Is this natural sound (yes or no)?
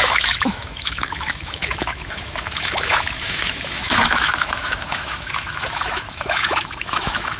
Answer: no